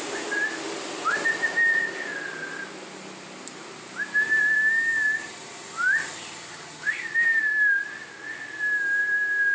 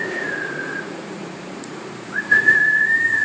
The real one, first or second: first